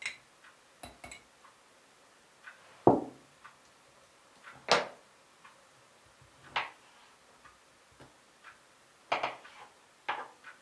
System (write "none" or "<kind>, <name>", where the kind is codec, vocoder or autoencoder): none